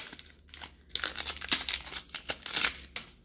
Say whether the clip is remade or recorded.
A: recorded